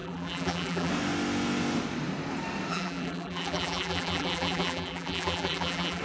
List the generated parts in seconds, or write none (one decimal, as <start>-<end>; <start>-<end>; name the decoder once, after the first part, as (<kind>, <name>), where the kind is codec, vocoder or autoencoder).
0.0-0.9 (vocoder, BigVGAN v2); 2.7-6.0